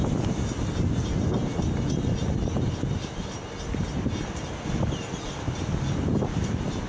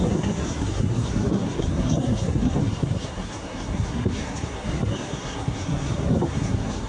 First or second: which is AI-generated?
second